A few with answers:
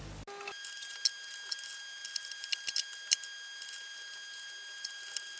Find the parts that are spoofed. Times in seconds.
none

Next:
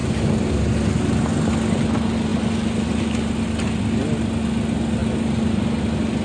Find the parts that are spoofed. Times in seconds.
none

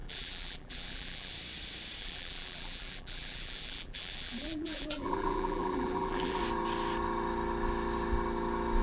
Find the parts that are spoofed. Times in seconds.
0.0-1.3 (vocoder, BigVGAN v2); 2.0-6.4

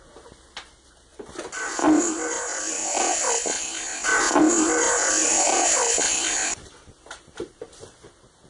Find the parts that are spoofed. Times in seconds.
1.1-2.1 (vocoder, BigVGAN v2); 5.2-8.1

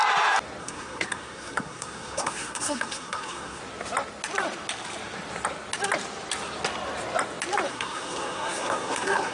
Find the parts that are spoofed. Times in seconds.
0.6-3.6 (codec, SNAC); 7.7-9.3

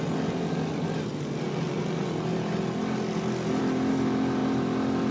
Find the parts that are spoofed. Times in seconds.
none

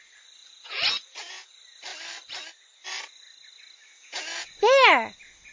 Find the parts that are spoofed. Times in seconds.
0.4-1.5 (vocoder, Vocos); 3.9-4.5

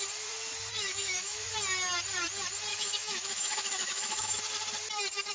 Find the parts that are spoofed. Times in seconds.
0.7-1.5 (autoencoder, DAC-VAE); 2.7-4.4